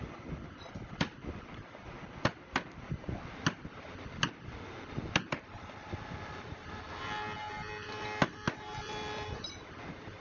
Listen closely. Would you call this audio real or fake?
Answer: real